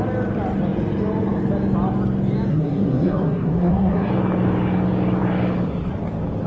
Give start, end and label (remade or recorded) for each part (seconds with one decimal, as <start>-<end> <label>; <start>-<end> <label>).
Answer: 0.0-2.5 recorded; 2.5-4.1 remade; 4.1-6.5 recorded